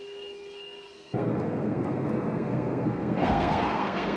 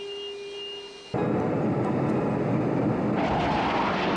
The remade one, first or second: first